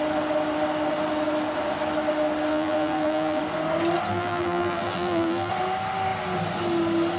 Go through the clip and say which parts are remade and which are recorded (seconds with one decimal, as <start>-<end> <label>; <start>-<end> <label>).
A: 0.0-2.5 recorded; 2.5-3.4 remade; 3.4-4.1 recorded; 4.1-5.5 remade; 5.5-7.2 recorded